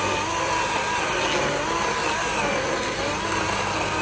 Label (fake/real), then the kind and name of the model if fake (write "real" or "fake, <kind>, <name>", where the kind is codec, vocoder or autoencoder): real